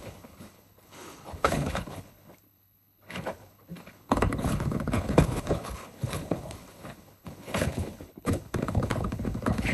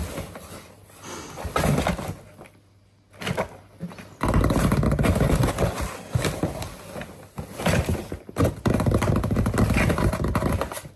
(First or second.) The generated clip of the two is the first